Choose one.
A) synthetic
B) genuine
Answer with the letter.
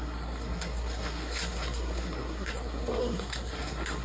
A